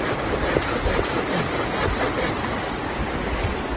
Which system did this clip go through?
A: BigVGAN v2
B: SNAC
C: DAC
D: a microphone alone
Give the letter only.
D